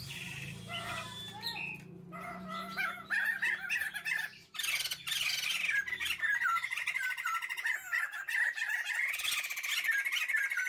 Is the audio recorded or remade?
recorded